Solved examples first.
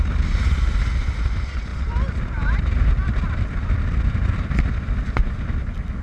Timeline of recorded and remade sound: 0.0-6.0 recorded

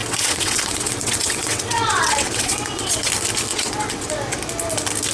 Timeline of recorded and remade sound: 0.0-3.1 remade; 3.1-3.5 recorded; 3.5-4.1 remade; 4.1-5.1 recorded

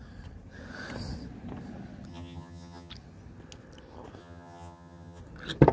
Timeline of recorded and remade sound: 0.0-2.1 recorded; 2.1-2.9 remade; 2.9-4.2 recorded; 4.2-5.2 remade; 5.2-5.7 recorded

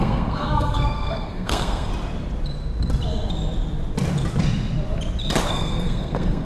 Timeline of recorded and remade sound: 0.0-1.9 remade; 1.9-5.5 recorded; 5.5-6.4 remade

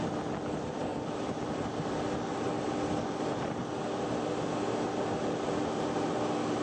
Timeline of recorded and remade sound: 0.0-0.9 recorded; 0.9-3.8 remade; 3.8-6.6 recorded

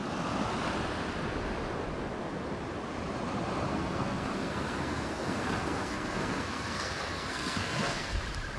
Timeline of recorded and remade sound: 0.0-3.7 recorded; 3.7-8.2 remade; 8.2-8.6 recorded

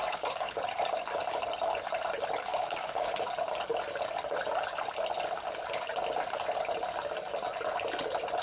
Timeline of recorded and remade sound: 0.0-0.6 remade; 0.6-2.5 recorded; 2.5-3.1 remade; 3.1-8.4 recorded